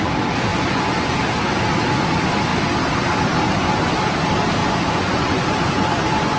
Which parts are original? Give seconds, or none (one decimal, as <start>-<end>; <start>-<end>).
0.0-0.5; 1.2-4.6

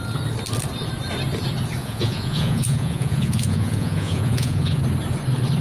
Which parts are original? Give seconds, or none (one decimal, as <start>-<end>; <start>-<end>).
0.0-1.8; 4.8-5.6

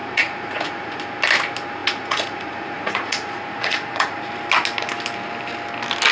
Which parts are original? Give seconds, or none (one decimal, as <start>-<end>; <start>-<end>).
1.0-1.8; 4.3-6.1

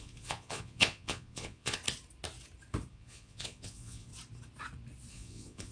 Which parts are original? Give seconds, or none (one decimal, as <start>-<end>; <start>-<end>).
1.8-2.9; 4.1-5.1

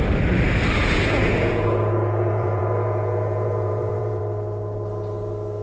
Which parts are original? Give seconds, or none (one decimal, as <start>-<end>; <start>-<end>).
0.0-0.8; 4.2-5.6